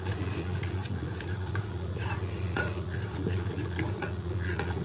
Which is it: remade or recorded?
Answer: remade